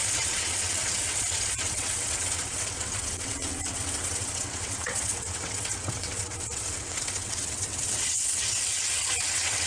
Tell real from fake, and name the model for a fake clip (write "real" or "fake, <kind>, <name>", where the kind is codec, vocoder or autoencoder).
fake, vocoder, WaveNeXt